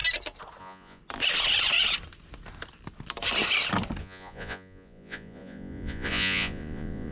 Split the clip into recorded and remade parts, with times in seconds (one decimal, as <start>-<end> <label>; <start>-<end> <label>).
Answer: 0.0-0.6 recorded; 0.6-1.0 remade; 1.0-4.0 recorded; 4.0-7.1 remade